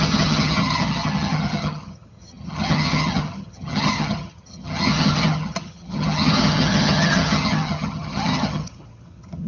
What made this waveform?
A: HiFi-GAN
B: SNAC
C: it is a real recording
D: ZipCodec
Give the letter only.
A